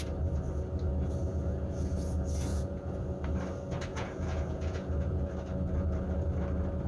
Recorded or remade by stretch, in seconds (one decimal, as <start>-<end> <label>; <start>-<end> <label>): 0.0-1.3 recorded; 1.3-1.9 remade; 1.9-2.5 recorded; 2.5-3.0 remade; 3.0-3.9 recorded; 3.9-5.3 remade; 5.3-6.9 recorded